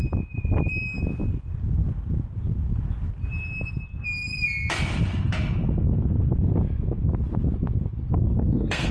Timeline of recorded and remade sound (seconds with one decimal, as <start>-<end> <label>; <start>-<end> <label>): 0.0-8.3 recorded; 8.3-8.9 remade